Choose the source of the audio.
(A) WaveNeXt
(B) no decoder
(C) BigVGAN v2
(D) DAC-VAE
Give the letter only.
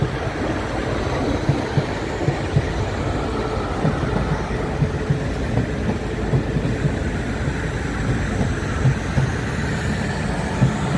B